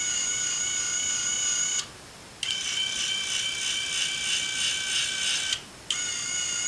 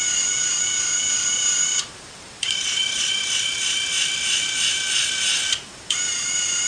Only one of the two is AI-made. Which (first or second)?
second